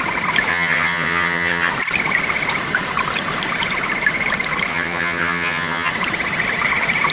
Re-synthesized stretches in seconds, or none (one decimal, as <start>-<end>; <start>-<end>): 0.5-1.7; 4.7-5.9